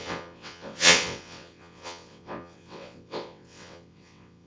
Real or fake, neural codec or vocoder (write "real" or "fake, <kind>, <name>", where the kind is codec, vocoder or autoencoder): fake, vocoder, WaveNeXt